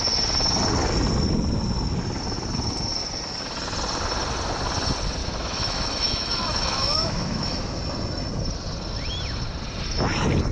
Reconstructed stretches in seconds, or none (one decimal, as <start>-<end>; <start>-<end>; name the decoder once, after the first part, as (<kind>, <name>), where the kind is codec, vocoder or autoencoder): 5.2-7.8 (autoencoder, DAC-VAE)